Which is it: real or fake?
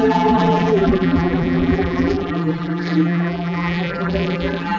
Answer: fake